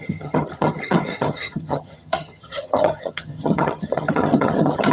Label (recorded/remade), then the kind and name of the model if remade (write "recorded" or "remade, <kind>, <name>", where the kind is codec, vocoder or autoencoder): remade, vocoder, HiFi-GAN